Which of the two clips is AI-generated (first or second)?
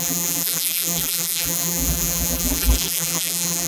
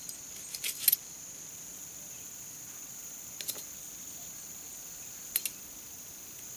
first